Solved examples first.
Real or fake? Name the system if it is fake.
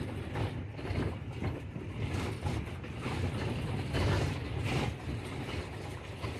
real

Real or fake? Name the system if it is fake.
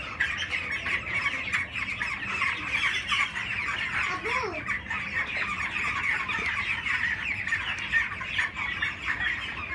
real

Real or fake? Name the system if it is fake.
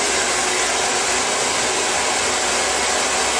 real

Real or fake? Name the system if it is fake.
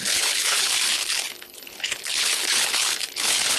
fake, codec, HILCodec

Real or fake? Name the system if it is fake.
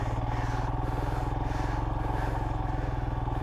real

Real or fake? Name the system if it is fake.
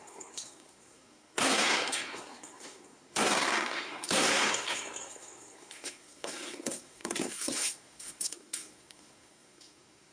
fake, codec, SNAC